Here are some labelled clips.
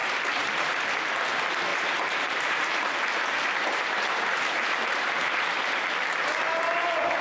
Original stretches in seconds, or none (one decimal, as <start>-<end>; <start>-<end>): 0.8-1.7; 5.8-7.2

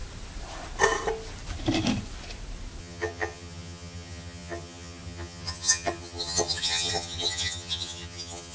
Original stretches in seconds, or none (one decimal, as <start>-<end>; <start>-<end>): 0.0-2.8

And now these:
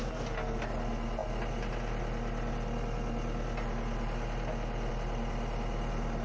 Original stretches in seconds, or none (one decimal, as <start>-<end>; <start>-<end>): 0.0-6.2

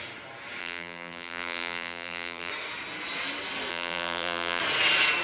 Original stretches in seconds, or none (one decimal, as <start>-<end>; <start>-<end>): 0.0-0.6; 2.5-3.7; 4.6-5.2